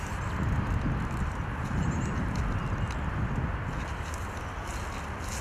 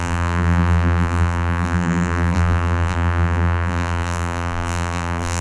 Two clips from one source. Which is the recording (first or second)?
first